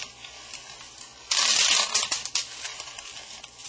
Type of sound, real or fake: real